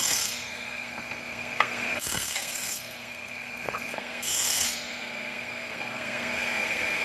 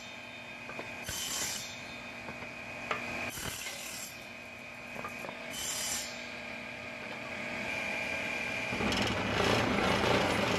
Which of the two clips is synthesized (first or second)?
first